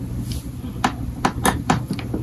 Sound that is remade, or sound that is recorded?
recorded